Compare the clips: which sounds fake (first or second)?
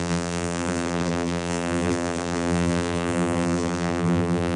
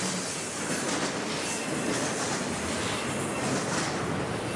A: first